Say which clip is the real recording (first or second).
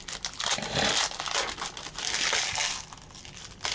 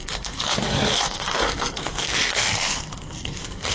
first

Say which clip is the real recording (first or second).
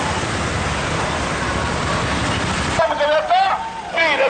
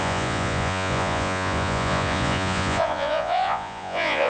first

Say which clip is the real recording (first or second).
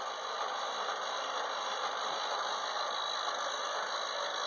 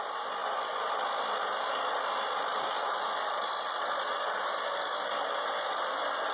second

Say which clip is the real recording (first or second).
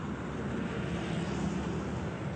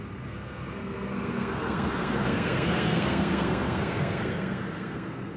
first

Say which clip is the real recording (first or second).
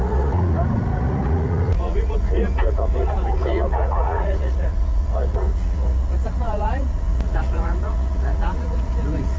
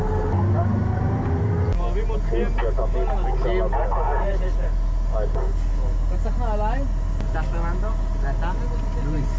second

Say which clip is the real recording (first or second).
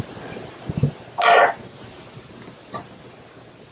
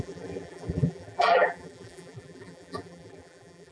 first